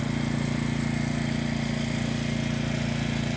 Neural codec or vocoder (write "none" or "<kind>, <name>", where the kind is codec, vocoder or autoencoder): none